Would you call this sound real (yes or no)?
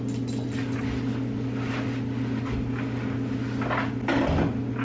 yes